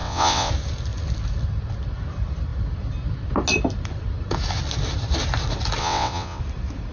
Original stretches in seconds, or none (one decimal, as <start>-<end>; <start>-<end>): 0.5-5.8; 6.4-6.9